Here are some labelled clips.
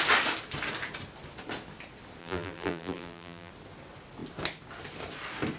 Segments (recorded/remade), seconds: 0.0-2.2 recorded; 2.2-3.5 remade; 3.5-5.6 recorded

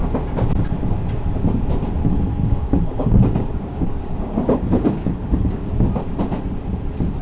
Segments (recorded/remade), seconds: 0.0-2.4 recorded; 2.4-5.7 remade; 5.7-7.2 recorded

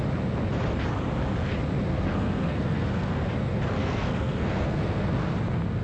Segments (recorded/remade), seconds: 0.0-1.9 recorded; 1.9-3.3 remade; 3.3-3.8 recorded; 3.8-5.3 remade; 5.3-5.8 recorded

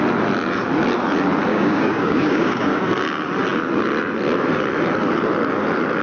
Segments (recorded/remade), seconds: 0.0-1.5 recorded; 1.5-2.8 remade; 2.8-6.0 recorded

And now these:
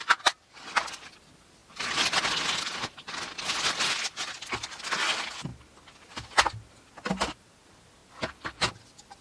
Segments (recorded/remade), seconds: 0.0-9.2 recorded

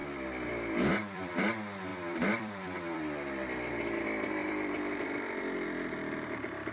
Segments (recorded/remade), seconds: 0.0-1.3 remade; 1.3-1.9 recorded; 1.9-3.0 remade; 3.0-4.4 recorded; 4.4-5.4 remade; 5.4-6.7 recorded